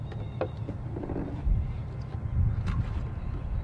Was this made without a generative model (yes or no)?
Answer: no